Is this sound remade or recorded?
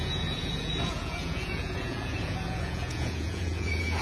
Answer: remade